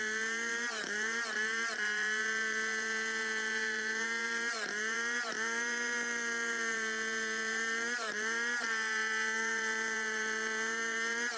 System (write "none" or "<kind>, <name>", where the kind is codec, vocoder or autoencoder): vocoder, BigVGAN v2